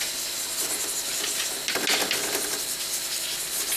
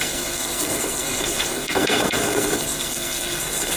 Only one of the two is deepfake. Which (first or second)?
second